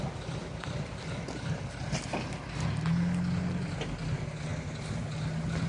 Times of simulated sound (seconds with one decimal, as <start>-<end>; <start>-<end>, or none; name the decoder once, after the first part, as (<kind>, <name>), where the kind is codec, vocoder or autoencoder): none